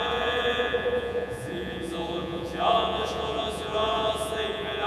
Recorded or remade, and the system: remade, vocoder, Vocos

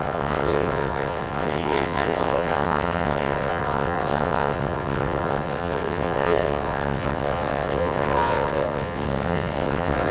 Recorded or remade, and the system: remade, vocoder, WaveNeXt